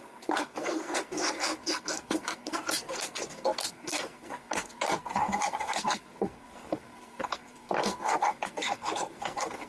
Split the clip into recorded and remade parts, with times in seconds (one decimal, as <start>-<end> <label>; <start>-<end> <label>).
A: 0.0-9.7 remade

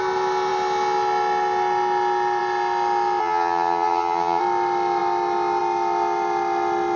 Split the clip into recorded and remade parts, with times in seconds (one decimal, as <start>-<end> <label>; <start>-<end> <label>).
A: 0.0-3.2 recorded; 3.2-4.4 remade; 4.4-7.0 recorded

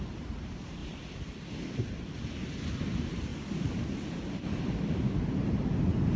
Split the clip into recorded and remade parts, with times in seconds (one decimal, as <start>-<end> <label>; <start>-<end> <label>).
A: 0.0-0.8 remade; 0.8-2.7 recorded; 2.7-3.3 remade; 3.3-5.0 recorded; 5.0-6.2 remade

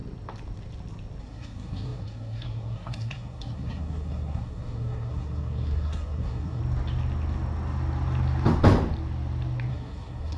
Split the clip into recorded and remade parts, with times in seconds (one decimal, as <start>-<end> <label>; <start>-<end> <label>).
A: 0.0-1.2 recorded; 1.2-6.6 remade; 6.6-9.7 recorded; 9.7-10.4 remade

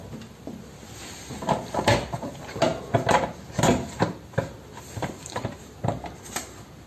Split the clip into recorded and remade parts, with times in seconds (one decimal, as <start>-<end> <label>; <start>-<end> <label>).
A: 0.0-6.9 recorded

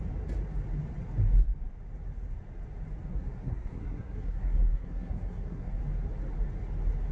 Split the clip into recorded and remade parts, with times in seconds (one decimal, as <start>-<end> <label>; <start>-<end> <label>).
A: 0.0-3.1 recorded; 3.1-5.8 remade; 5.8-7.1 recorded